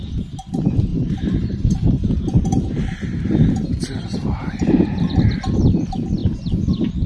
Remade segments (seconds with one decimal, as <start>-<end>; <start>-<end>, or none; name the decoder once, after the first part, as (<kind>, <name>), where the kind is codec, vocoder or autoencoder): 0.9-5.2 (vocoder, BigVGAN v2); 6.2-7.1